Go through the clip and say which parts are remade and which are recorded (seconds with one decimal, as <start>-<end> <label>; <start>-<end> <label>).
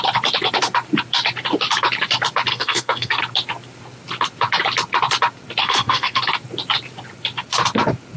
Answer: 0.0-2.5 recorded; 2.5-3.2 remade; 3.2-5.6 recorded; 5.6-6.2 remade; 6.2-8.2 recorded